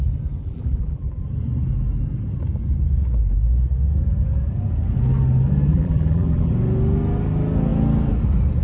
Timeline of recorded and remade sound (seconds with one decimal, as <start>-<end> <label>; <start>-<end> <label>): 0.0-0.4 recorded; 0.4-1.2 remade; 1.2-5.7 recorded; 5.7-6.5 remade; 6.5-8.6 recorded